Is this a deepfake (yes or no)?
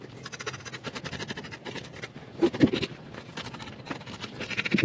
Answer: no